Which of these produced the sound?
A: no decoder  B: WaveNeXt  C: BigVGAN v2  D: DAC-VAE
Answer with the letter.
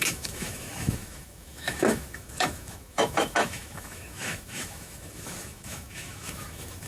D